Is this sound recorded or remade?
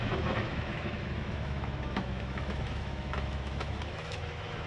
remade